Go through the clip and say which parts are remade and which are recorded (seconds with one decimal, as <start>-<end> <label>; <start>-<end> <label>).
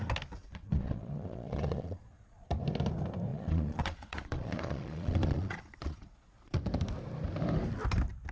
0.0-0.4 recorded; 0.4-2.5 remade; 2.5-3.3 recorded; 3.3-6.6 remade; 6.6-8.3 recorded